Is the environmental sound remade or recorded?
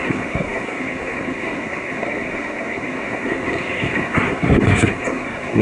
remade